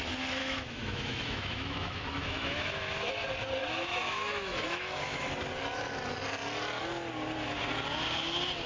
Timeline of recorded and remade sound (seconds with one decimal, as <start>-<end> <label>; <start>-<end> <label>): 0.0-0.4 recorded; 0.4-3.1 remade; 3.1-3.6 recorded; 3.6-5.3 remade; 5.3-8.7 recorded